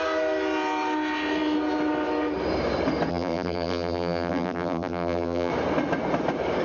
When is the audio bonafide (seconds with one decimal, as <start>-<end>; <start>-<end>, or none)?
0.0-3.1; 5.5-6.6